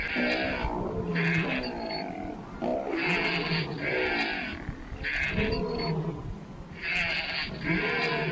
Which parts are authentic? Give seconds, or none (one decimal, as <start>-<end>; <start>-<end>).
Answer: 0.0-8.3